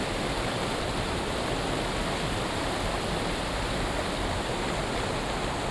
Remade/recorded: recorded